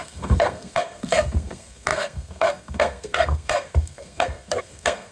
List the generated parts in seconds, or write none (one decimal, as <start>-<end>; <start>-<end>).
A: 0.0-5.1